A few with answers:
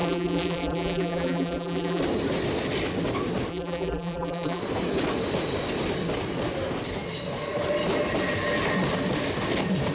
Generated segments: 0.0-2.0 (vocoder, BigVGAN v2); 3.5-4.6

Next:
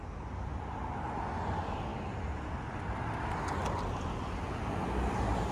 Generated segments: none

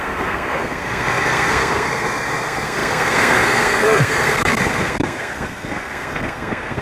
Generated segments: 0.0-6.8 (codec, SNAC)

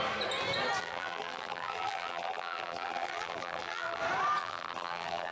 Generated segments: 0.8-4.0 (vocoder, BigVGAN v2); 4.4-5.3